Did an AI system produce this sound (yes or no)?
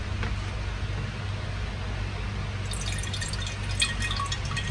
no